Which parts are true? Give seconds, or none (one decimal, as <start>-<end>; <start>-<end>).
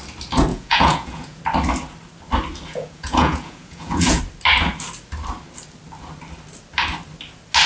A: 0.0-0.5; 1.4-2.7; 4.2-7.7